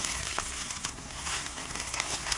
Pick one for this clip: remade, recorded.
remade